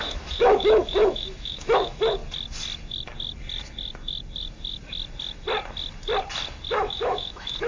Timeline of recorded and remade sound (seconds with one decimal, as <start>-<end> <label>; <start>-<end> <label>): 0.0-2.2 remade; 2.2-6.7 recorded; 6.7-7.7 remade